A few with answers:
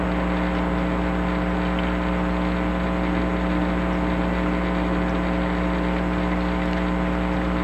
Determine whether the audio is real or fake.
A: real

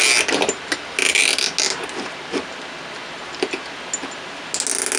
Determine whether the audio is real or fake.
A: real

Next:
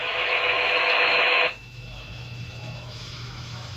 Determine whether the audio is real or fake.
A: fake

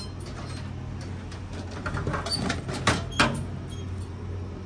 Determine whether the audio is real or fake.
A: real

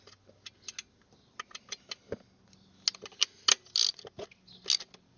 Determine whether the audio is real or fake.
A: real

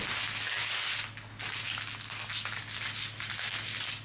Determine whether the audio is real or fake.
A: real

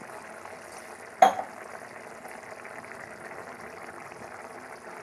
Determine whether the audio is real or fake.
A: real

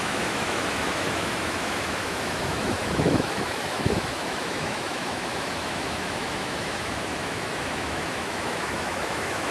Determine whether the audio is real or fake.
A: fake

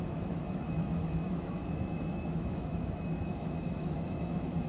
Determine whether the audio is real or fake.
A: fake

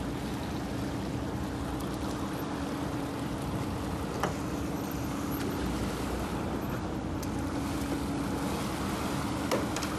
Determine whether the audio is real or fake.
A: real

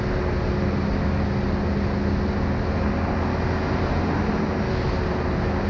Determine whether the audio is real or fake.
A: real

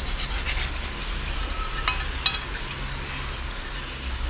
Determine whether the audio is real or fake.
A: real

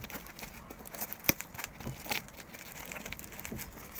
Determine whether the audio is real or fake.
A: real